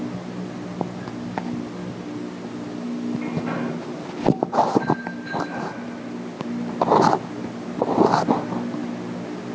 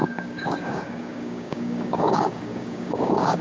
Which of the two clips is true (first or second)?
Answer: first